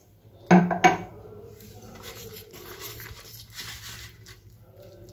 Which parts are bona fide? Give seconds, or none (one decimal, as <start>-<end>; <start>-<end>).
0.0-1.1; 2.9-5.1